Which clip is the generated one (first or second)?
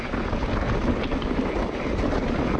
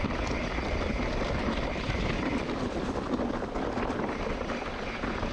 second